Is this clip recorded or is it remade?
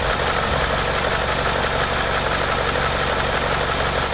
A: recorded